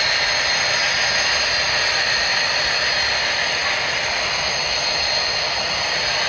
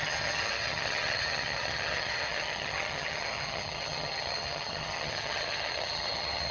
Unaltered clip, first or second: first